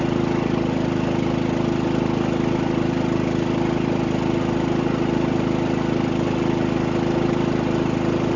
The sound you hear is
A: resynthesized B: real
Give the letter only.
B